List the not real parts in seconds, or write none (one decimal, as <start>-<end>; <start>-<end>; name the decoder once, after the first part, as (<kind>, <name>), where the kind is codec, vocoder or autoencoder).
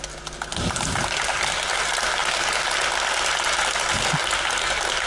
none